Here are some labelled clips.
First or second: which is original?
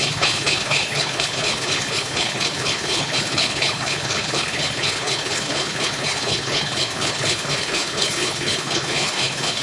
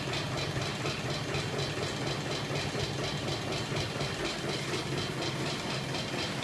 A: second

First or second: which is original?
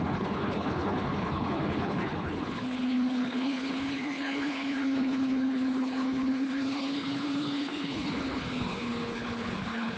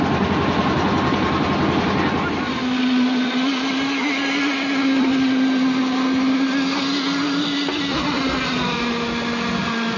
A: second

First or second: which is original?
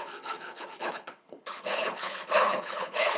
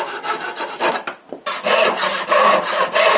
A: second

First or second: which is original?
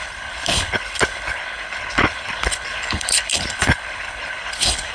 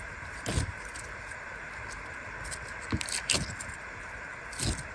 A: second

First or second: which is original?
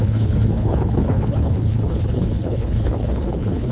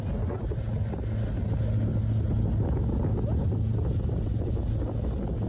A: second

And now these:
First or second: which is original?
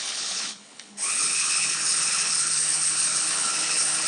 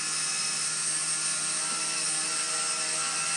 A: second